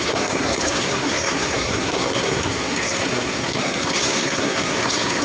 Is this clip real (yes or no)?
no